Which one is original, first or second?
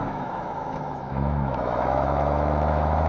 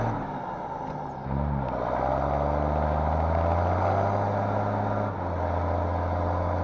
second